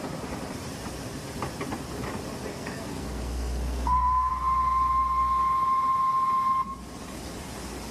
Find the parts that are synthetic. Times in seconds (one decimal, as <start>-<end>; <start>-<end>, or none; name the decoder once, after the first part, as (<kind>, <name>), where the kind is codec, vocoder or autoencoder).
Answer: 2.5-4.3 (codec, SNAC)